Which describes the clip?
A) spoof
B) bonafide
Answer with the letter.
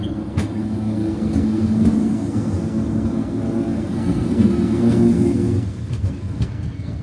A